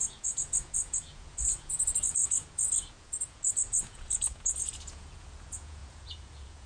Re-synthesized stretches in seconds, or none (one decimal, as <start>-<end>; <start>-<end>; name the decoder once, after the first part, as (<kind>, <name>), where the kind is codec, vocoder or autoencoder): 0.0-6.7 (vocoder, Vocos)